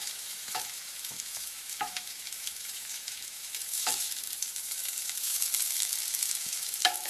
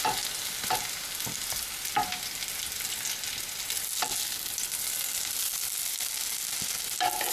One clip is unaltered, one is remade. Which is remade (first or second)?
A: first